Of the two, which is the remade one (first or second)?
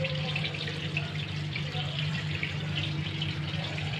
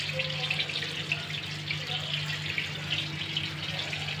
first